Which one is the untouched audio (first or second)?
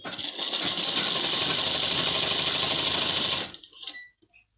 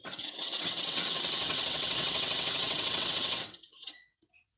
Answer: first